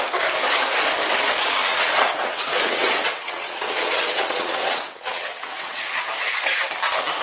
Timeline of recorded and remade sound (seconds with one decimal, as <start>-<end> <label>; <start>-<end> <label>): 0.0-1.7 recorded; 1.7-6.0 remade; 6.0-7.2 recorded